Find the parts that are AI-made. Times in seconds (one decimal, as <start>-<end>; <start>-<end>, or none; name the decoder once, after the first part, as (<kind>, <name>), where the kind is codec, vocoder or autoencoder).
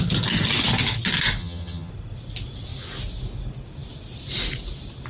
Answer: 1.4-1.9 (vocoder, HiFi-GAN)